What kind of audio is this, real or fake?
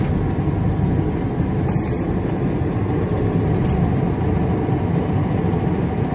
real